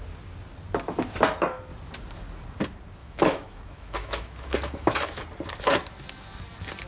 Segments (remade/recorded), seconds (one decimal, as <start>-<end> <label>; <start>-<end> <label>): 0.0-3.0 recorded; 3.0-5.2 remade; 5.2-6.9 recorded